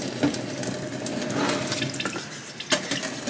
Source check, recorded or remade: recorded